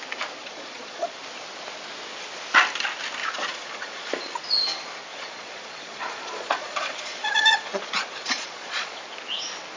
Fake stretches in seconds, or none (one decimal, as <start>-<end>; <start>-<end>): 0.4-1.2; 3.2-4.1; 5.1-9.0